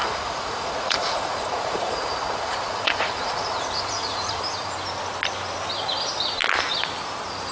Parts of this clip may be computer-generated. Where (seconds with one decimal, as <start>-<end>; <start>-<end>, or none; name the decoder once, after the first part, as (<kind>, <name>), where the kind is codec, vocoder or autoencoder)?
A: 0.0-4.4 (vocoder, Vocos)